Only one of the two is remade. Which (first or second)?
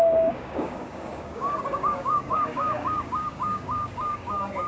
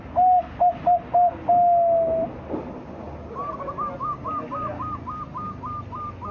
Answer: first